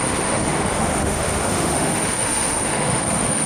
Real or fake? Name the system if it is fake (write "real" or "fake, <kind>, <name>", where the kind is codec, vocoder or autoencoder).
fake, autoencoder, DAC-VAE